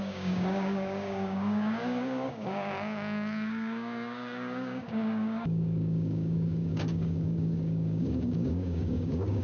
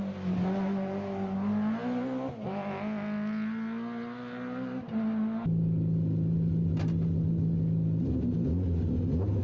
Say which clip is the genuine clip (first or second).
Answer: second